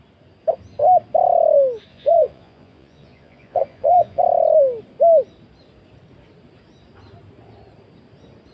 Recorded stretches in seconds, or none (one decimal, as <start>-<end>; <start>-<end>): 0.0-1.9; 4.2-8.5